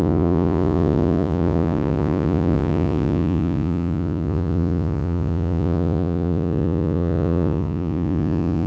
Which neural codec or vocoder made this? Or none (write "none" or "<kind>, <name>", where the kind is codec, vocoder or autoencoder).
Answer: vocoder, Vocos